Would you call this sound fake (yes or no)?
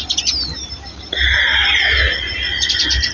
no